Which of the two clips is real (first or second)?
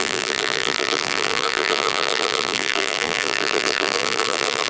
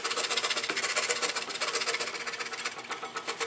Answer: second